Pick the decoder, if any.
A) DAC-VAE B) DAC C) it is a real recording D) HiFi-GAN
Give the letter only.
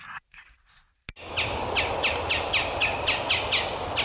C